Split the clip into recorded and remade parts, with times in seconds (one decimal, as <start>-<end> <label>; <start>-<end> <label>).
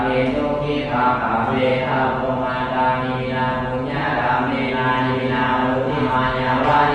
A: 0.0-6.9 recorded